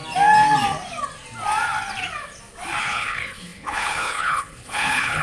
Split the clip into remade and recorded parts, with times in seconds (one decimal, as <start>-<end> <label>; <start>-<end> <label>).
0.0-2.8 recorded; 2.8-5.2 remade